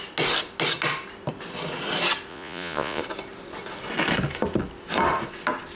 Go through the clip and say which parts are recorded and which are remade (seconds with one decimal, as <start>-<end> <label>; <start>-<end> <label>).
0.0-2.3 recorded; 2.3-3.0 remade; 3.0-5.8 recorded